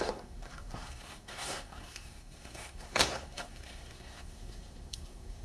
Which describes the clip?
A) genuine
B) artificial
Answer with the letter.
B